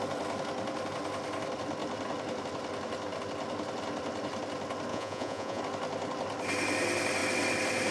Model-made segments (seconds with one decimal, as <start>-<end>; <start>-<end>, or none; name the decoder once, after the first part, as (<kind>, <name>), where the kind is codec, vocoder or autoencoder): 4.9-5.6 (vocoder, Vocos)